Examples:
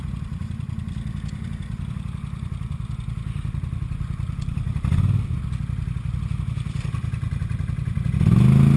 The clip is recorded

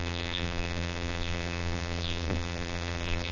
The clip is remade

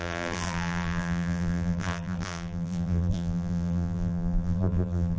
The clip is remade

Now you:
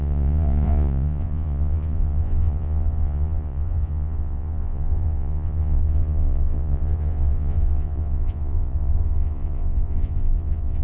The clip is remade